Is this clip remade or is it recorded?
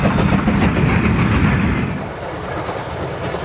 recorded